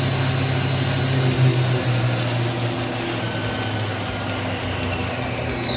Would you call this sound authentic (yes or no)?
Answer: yes